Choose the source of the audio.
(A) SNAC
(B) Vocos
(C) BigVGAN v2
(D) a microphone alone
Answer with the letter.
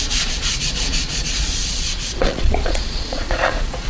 B